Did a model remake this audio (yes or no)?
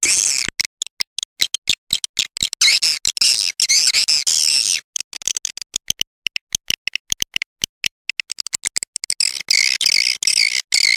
no